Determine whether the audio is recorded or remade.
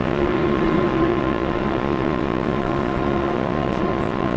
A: remade